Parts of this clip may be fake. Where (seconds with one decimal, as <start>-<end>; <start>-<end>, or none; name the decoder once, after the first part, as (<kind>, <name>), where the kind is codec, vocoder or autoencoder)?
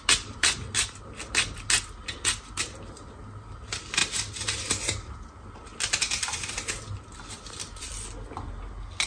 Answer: none